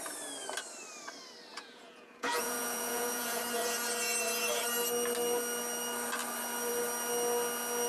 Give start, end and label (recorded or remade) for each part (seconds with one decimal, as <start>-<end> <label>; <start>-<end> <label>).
0.0-1.5 recorded; 1.5-3.4 remade; 3.4-7.9 recorded